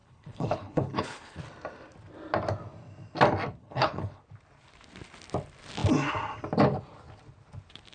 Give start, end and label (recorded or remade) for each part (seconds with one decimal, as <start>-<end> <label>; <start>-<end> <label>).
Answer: 0.0-1.4 remade; 1.4-3.6 recorded; 3.6-4.2 remade; 4.2-7.9 recorded